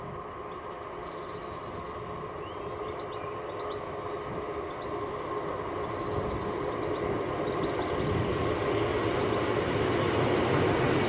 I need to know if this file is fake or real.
real